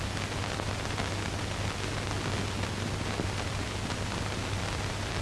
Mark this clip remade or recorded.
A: recorded